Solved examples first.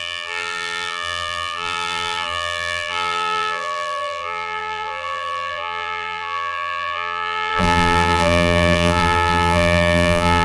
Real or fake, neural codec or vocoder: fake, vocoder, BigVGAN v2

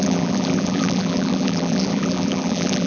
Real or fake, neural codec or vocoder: fake, vocoder, BigVGAN v2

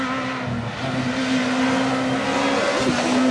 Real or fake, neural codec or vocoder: real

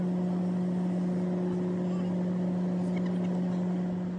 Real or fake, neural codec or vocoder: real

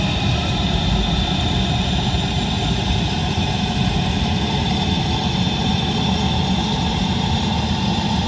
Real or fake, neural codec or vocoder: fake, vocoder, BigVGAN v2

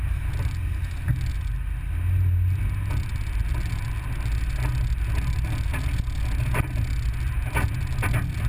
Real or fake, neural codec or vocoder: real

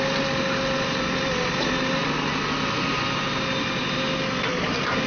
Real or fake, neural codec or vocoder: real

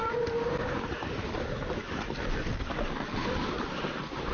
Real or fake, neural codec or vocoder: real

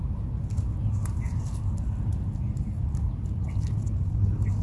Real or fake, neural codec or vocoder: real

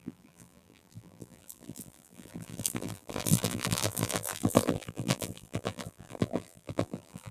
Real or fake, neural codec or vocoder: fake, vocoder, BigVGAN v2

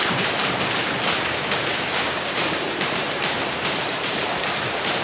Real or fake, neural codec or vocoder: fake, vocoder, BigVGAN v2